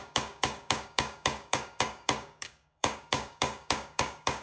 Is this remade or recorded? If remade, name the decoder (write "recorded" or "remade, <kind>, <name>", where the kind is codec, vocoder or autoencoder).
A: remade, codec, DAC